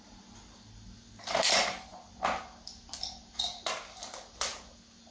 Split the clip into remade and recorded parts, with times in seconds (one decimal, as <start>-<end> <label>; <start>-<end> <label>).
0.0-5.1 recorded

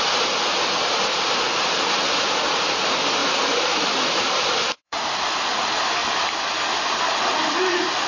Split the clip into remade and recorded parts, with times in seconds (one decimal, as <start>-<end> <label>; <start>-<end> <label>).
0.0-3.2 recorded; 3.2-5.3 remade; 5.3-6.0 recorded; 6.0-6.6 remade; 6.6-8.1 recorded

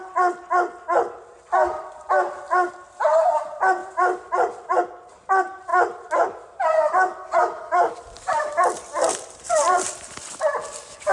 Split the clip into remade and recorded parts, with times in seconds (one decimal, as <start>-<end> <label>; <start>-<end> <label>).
0.0-3.8 recorded; 3.8-4.8 remade; 4.8-7.8 recorded; 7.8-10.1 remade; 10.1-11.1 recorded

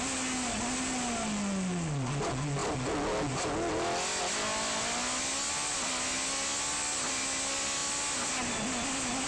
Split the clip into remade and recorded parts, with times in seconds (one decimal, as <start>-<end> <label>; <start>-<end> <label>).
0.0-9.3 recorded

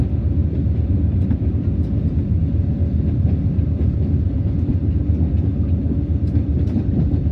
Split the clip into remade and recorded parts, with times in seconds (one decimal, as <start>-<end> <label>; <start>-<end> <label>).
0.0-0.4 recorded; 0.4-2.4 remade; 2.4-2.8 recorded; 2.8-4.4 remade; 4.4-6.5 recorded; 6.5-7.3 remade

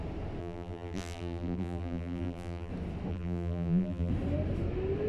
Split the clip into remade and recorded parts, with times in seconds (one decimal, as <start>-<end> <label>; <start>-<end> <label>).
0.0-0.4 recorded; 0.4-2.7 remade; 2.7-3.1 recorded; 3.1-4.1 remade; 4.1-5.1 recorded